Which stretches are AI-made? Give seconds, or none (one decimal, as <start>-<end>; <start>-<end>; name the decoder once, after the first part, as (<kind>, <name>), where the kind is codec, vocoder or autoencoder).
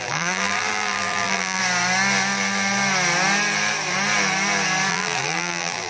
0.0-1.6 (vocoder, BigVGAN v2); 4.9-5.9